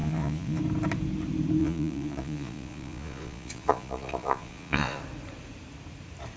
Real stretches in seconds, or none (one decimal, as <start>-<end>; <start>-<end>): 0.6-1.6; 5.0-6.4